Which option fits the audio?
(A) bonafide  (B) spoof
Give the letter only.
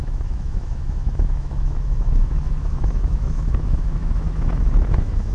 B